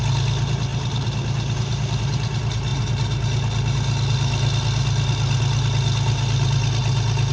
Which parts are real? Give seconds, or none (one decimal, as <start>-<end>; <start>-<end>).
0.0-7.3